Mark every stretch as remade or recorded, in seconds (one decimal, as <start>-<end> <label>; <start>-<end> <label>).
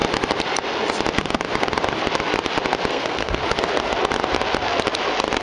0.0-2.9 recorded; 2.9-3.4 remade; 3.4-5.4 recorded